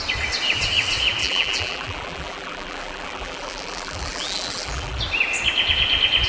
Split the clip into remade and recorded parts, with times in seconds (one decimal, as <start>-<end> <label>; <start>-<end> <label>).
0.0-1.2 recorded; 1.2-5.0 remade; 5.0-6.3 recorded